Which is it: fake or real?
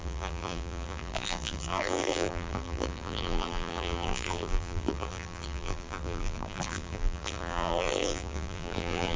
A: fake